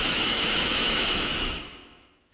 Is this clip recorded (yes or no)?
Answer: no